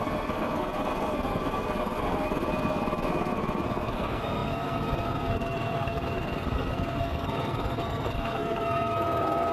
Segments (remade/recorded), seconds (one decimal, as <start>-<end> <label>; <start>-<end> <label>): 0.0-9.5 remade